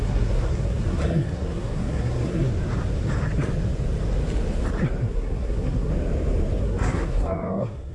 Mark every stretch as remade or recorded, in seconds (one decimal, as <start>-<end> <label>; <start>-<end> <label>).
0.0-2.5 remade; 2.5-5.1 recorded; 5.1-5.9 remade; 5.9-6.6 recorded; 6.6-7.9 remade